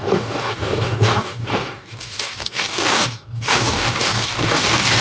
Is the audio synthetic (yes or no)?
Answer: yes